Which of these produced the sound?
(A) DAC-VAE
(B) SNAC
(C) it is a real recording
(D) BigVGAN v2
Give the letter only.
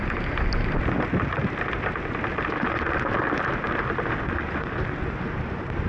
C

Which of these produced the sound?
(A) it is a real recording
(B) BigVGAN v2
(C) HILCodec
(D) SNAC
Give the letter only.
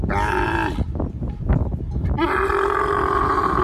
A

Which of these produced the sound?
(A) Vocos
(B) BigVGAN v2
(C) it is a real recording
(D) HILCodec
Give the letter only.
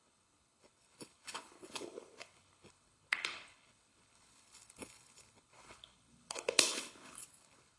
D